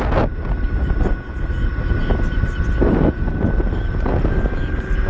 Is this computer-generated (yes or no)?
no